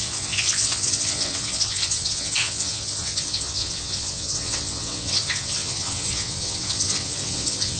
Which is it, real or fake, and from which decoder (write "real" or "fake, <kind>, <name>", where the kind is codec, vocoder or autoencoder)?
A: fake, vocoder, WaveNeXt